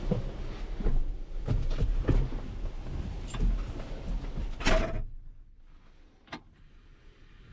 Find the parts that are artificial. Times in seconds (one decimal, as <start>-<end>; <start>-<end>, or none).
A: none